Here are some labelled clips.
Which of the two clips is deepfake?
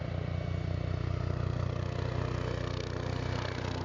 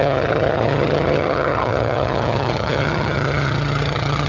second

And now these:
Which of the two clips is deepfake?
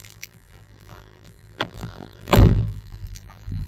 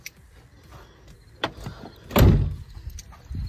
first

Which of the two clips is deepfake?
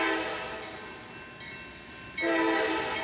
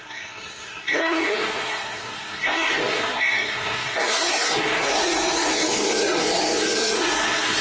second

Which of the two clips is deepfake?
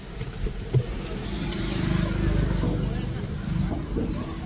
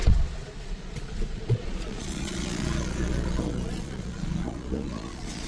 second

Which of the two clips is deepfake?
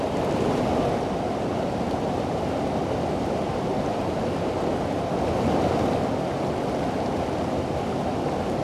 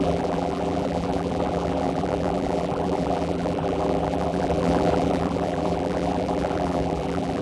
second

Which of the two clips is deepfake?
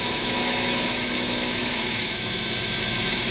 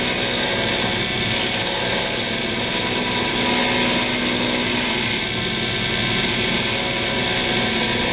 first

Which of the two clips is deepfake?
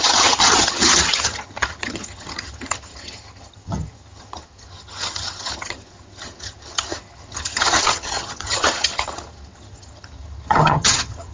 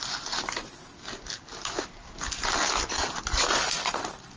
first